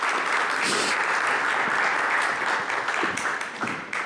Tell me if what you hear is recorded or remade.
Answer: recorded